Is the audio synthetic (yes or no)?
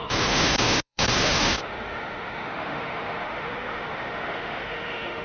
yes